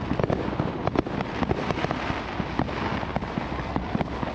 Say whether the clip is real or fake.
real